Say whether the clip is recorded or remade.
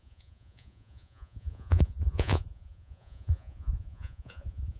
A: remade